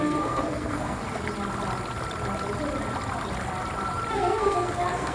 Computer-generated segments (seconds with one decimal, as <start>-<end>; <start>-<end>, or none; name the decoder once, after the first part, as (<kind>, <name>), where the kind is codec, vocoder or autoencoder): 0.0-1.0 (codec, SNAC); 4.1-5.1